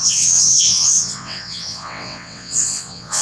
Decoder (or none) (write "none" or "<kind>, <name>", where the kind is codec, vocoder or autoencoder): vocoder, WaveNeXt